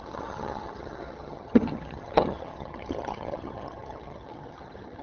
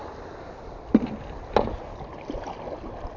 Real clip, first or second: second